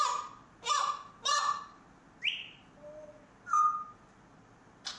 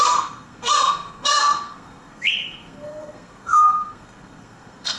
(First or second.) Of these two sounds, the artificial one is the second